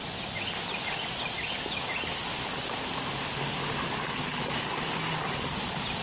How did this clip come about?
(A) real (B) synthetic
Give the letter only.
A